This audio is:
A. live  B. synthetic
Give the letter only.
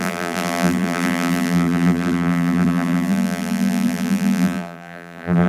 B